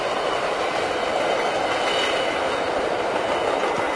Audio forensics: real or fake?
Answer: real